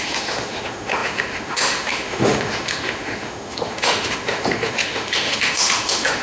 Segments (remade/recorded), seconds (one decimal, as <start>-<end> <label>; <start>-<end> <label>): 0.0-6.2 remade